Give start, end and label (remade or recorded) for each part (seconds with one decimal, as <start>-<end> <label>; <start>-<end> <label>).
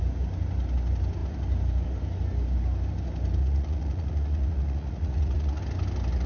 0.0-3.4 recorded; 3.4-5.6 remade; 5.6-6.3 recorded